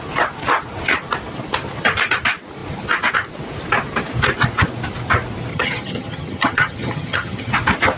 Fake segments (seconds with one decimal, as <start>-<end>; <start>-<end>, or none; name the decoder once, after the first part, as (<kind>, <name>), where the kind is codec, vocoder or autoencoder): 5.5-7.5 (vocoder, HiFi-GAN)